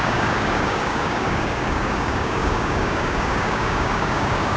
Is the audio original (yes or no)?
no